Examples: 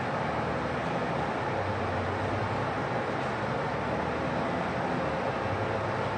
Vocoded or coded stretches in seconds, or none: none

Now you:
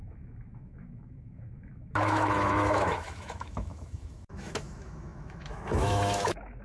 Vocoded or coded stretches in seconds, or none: 0.0-6.6

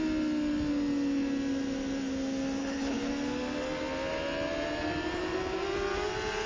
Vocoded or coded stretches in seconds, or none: 2.6-3.1